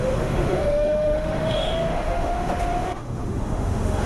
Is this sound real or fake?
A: fake